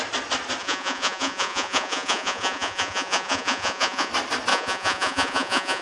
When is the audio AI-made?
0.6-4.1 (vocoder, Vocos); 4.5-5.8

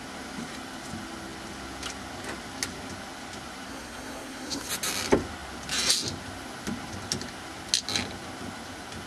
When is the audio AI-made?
3.7-4.7 (codec, SNAC)

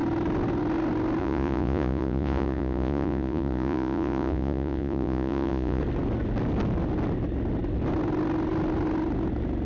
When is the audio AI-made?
1.2-5.8 (vocoder, Vocos)

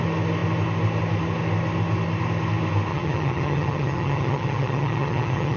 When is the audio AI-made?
2.9-5.6 (vocoder, HiFi-GAN)